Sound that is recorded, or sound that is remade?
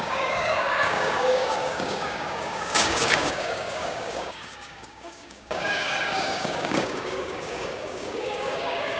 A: remade